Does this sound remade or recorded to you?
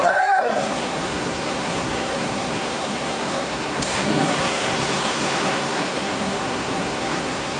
remade